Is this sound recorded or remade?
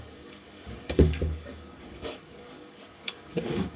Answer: remade